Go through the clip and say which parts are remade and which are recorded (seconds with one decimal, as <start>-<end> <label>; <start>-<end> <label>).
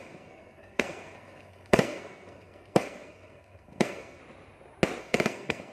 0.0-4.2 remade; 4.2-5.0 recorded; 5.0-5.7 remade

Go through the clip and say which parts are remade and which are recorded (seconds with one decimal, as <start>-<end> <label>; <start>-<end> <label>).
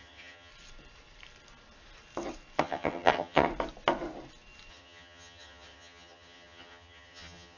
0.0-0.5 remade; 0.5-2.6 recorded; 2.6-3.5 remade; 3.5-4.7 recorded; 4.7-7.6 remade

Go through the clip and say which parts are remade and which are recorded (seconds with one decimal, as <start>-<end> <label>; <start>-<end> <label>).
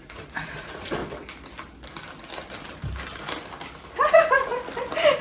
0.0-1.0 remade; 1.0-4.1 recorded; 4.1-4.5 remade; 4.5-5.2 recorded